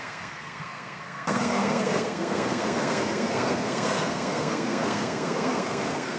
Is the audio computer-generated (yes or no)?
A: yes